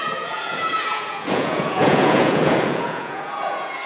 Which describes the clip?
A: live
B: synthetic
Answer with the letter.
B